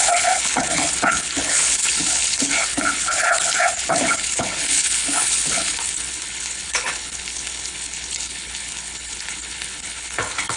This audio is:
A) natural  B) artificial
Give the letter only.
B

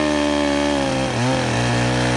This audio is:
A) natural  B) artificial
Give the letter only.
A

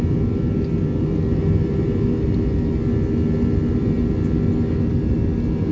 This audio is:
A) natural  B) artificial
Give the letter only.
A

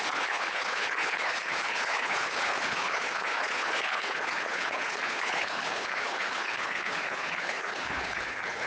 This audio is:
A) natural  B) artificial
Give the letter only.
B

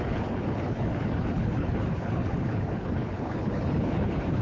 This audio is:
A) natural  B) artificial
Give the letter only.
B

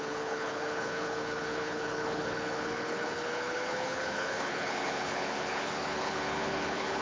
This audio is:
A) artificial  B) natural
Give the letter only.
A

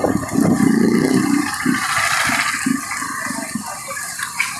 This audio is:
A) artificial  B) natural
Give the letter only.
B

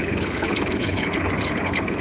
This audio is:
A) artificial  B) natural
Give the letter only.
A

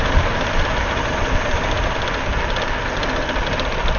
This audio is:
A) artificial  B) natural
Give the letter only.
B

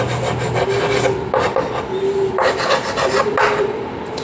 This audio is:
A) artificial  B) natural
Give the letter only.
B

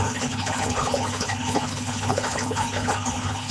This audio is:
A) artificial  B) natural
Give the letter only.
A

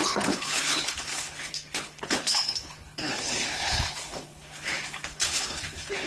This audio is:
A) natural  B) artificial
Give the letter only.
B